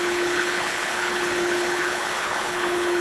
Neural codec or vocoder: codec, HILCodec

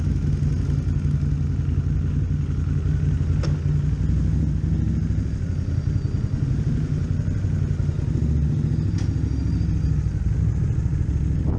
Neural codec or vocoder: none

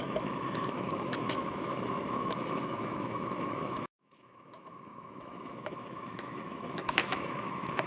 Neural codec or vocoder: autoencoder, DAC-VAE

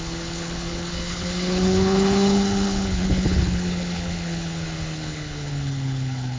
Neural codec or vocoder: codec, HILCodec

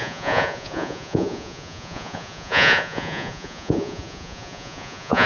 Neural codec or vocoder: vocoder, Vocos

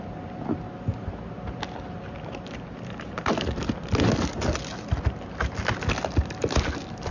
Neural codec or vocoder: none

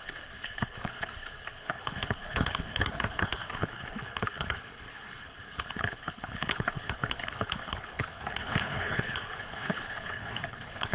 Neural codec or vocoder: codec, HILCodec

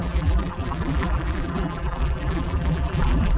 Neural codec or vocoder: vocoder, BigVGAN v2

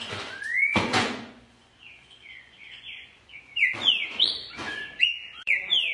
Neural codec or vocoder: vocoder, Vocos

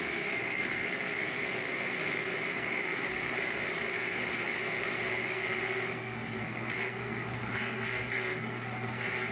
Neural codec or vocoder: codec, SNAC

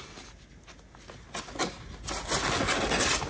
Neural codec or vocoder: none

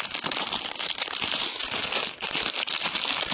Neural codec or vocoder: none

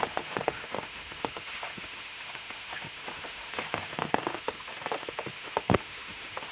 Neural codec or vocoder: autoencoder, DAC-VAE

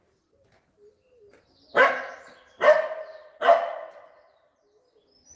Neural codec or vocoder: none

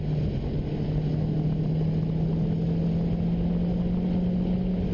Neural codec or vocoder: none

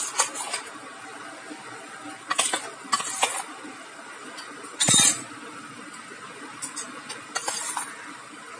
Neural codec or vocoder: none